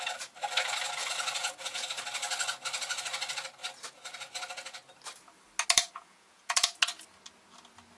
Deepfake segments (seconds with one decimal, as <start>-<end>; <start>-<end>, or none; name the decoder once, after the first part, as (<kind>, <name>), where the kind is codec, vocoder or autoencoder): 1.0-1.9 (vocoder, Vocos); 5.8-6.8